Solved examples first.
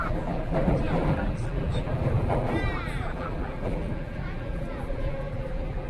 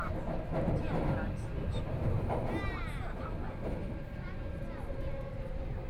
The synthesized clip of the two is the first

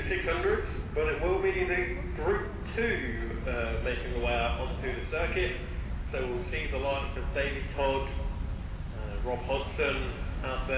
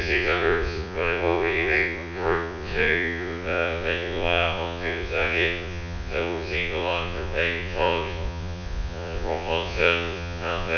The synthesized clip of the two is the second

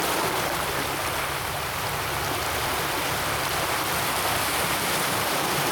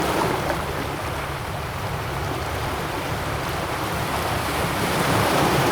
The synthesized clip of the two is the second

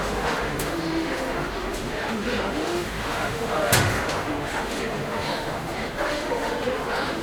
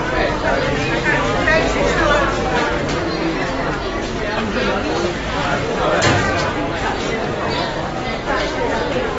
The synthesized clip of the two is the first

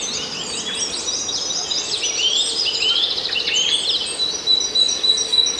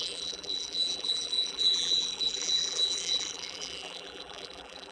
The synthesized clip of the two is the second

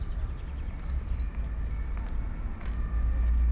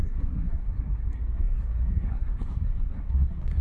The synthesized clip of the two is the second